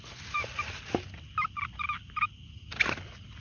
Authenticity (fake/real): real